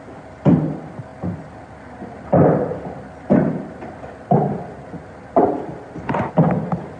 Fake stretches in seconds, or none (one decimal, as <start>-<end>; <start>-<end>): none